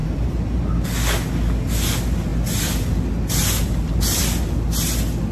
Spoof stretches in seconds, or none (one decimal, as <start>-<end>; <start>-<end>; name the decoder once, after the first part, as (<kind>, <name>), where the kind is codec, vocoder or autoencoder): 0.0-0.6 (vocoder, BigVGAN v2)